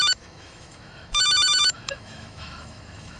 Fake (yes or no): yes